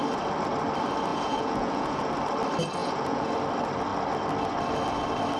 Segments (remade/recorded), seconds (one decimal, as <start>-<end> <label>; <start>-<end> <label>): 0.0-1.1 recorded; 1.1-2.1 remade; 2.1-2.8 recorded; 2.8-3.3 remade; 3.3-5.4 recorded